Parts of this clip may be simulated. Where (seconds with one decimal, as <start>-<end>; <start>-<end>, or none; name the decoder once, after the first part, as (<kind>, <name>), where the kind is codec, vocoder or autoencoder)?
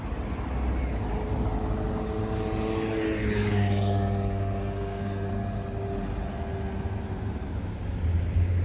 3.4-5.3 (codec, DAC)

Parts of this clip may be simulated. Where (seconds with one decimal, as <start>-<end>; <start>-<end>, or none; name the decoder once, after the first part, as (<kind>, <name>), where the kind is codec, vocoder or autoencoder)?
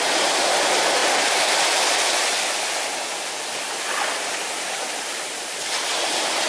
none